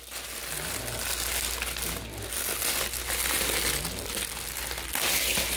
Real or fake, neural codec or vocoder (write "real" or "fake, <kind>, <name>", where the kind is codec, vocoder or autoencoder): real